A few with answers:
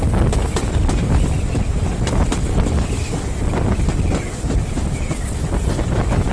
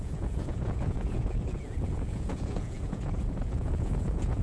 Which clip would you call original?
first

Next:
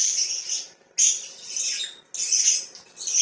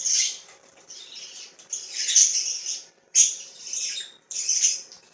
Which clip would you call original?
first